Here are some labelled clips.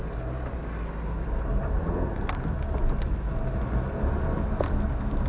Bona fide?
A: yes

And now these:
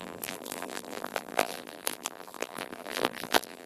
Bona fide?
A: no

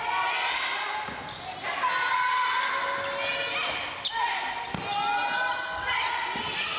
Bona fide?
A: yes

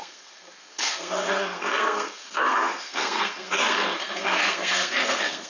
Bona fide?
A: no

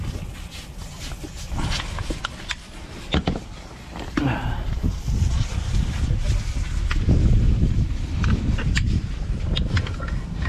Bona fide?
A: yes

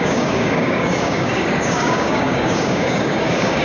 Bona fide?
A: no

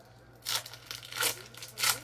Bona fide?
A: yes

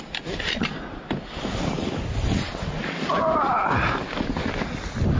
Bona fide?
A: yes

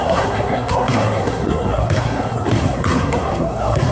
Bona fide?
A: no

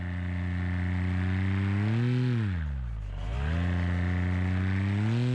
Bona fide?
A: yes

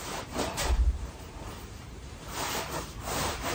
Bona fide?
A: no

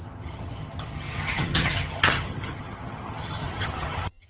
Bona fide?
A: no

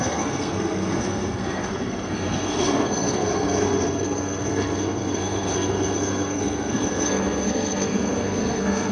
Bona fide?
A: no